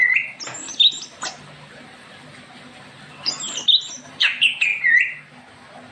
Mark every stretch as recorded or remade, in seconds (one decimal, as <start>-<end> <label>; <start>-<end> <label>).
0.0-5.9 recorded